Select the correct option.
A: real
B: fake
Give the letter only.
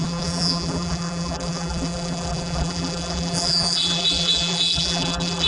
B